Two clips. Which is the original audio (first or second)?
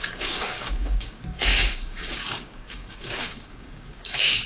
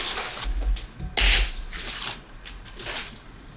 second